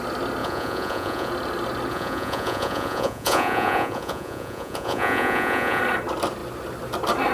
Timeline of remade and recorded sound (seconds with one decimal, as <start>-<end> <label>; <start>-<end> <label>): 0.0-0.4 recorded; 0.4-1.3 remade; 1.3-1.9 recorded; 1.9-5.8 remade; 5.8-7.3 recorded